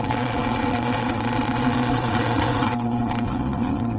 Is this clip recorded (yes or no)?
no